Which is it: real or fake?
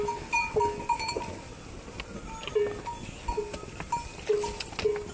real